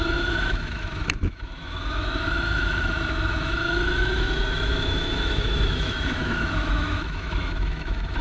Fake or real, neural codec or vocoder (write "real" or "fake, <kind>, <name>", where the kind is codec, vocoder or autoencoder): fake, autoencoder, DAC-VAE